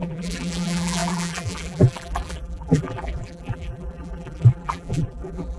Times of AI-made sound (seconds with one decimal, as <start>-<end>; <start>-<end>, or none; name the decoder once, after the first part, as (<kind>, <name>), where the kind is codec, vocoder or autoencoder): 0.0-5.6 (vocoder, BigVGAN v2)